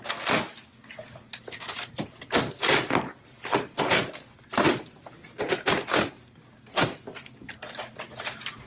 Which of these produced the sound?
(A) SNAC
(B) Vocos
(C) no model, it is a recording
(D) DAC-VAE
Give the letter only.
C